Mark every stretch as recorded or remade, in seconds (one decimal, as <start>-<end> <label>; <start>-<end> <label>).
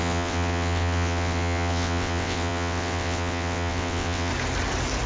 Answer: 0.0-4.3 remade; 4.3-5.1 recorded